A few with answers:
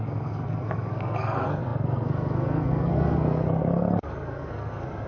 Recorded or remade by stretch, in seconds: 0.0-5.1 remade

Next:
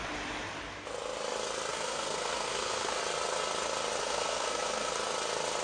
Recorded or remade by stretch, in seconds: 0.0-1.7 recorded; 1.7-3.0 remade; 3.0-4.0 recorded; 4.0-4.9 remade; 4.9-5.6 recorded

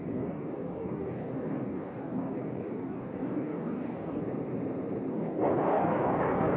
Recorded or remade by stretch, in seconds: 0.0-4.2 remade; 4.2-5.1 recorded; 5.1-6.6 remade

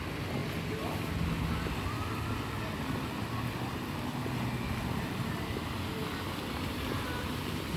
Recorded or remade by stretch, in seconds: 0.0-7.8 recorded

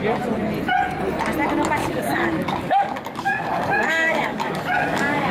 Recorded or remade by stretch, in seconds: 0.0-1.8 recorded; 1.8-5.3 remade